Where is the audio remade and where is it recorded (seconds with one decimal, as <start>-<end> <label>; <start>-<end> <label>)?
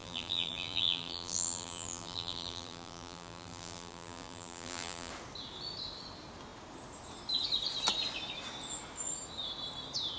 0.0-5.1 remade; 5.1-10.2 recorded